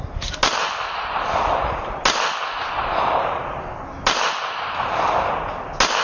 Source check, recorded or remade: recorded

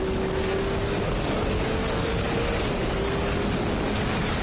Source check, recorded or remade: remade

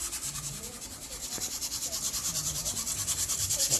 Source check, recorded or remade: remade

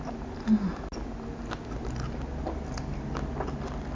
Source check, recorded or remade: recorded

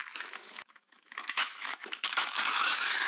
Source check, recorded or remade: remade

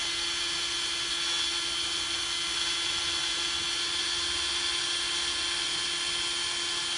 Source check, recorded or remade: recorded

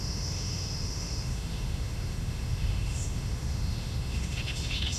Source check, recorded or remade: remade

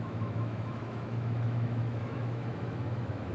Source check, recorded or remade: remade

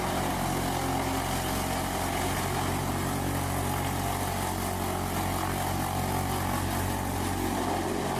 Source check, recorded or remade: recorded